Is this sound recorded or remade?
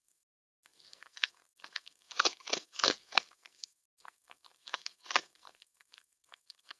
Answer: remade